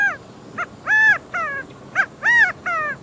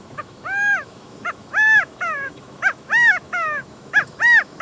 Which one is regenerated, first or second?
second